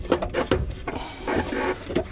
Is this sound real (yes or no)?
yes